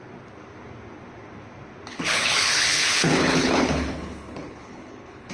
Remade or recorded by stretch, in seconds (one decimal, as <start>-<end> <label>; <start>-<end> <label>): 0.0-1.9 recorded; 1.9-5.3 remade